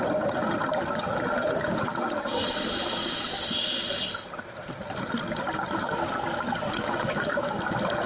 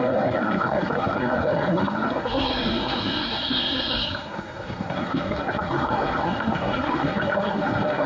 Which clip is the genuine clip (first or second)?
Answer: first